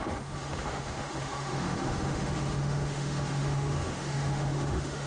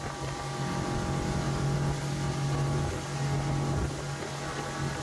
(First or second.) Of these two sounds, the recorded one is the second